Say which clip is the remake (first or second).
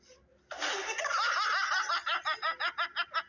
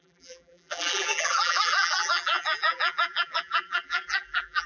second